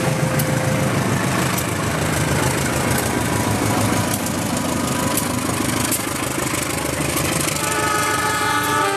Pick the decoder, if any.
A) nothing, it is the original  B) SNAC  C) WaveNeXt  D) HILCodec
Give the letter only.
A